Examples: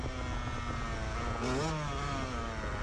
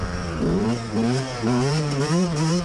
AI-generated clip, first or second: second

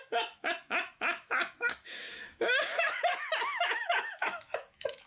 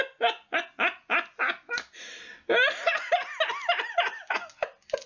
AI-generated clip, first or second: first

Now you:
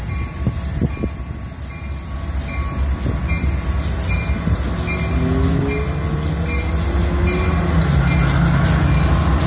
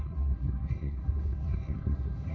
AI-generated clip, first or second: second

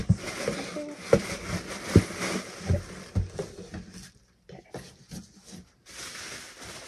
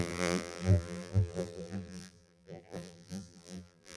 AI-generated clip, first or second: second